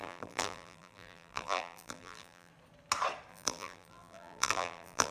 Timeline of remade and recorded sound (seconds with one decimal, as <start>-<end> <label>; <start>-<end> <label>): 0.0-2.5 remade; 2.5-3.3 recorded; 3.3-5.1 remade